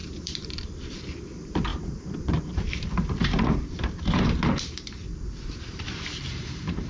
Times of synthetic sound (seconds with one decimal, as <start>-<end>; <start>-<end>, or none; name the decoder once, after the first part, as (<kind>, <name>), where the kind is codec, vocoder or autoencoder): 0.0-5.0 (vocoder, BigVGAN v2); 5.7-6.9